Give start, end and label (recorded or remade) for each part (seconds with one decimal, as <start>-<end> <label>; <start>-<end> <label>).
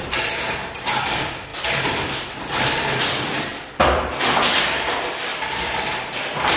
0.0-1.5 remade; 1.5-2.5 recorded; 2.5-6.6 remade